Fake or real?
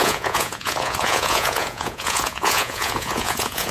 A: fake